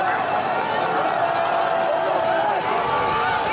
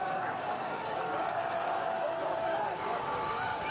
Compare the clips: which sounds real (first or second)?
first